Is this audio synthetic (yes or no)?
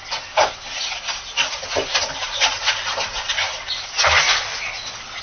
no